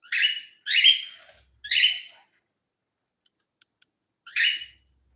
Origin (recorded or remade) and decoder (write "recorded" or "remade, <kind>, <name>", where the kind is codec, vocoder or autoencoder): recorded